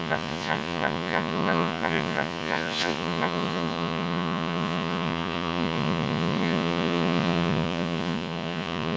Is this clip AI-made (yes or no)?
yes